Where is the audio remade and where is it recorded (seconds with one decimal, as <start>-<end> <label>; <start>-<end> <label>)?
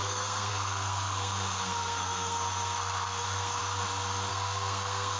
0.0-3.6 remade; 3.6-4.3 recorded; 4.3-5.2 remade